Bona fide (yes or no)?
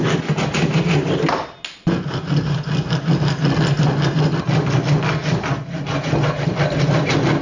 yes